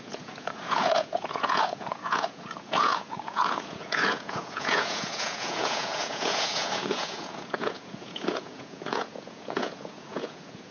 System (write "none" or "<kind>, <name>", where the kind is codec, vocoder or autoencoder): vocoder, Vocos